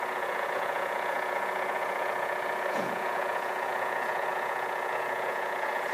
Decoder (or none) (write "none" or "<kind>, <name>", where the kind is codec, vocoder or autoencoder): vocoder, Vocos